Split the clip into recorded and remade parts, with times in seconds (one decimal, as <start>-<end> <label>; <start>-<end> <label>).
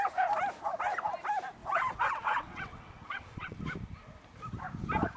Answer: 0.0-1.6 recorded; 1.6-3.6 remade; 3.6-5.2 recorded